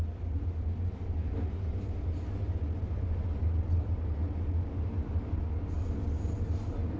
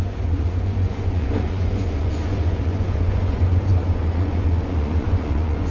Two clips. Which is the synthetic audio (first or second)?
second